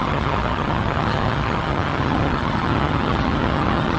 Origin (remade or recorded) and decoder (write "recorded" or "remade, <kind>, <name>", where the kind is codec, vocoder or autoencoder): remade, vocoder, HiFi-GAN